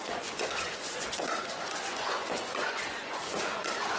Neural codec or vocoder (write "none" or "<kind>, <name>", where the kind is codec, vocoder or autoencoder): vocoder, Vocos